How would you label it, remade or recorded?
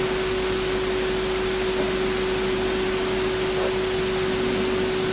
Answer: recorded